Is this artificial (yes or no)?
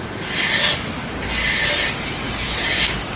no